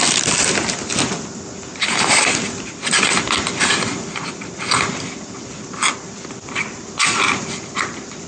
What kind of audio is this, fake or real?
real